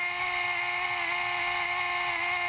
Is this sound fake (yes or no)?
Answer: no